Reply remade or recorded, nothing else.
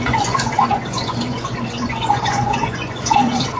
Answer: remade